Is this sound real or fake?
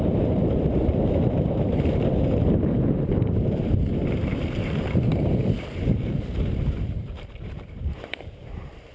fake